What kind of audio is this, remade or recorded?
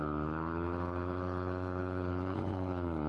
remade